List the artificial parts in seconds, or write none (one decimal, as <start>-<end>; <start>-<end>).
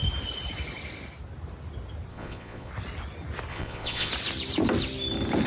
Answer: 2.1-2.7; 3.5-4.1